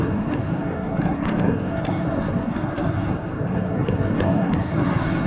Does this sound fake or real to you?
fake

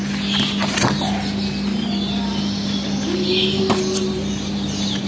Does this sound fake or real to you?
real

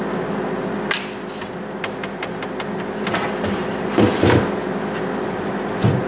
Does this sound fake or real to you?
real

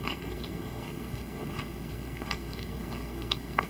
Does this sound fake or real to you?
fake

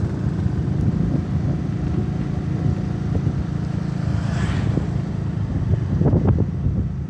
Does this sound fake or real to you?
real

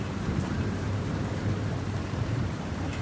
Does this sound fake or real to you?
fake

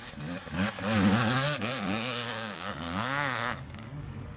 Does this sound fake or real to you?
fake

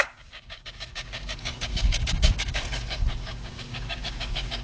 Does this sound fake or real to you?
fake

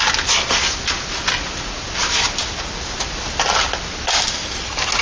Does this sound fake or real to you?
real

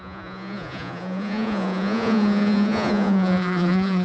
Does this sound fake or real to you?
fake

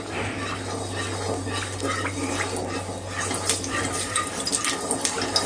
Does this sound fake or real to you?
real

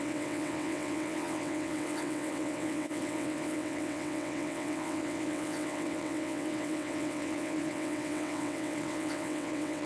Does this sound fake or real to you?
fake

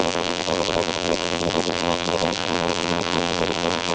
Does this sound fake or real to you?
fake